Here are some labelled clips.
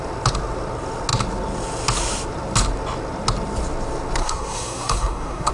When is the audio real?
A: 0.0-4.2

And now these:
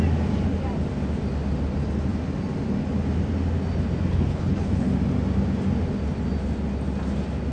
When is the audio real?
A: 0.0-4.1; 4.9-7.5

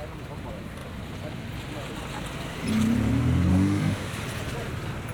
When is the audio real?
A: 0.0-3.5; 4.2-5.1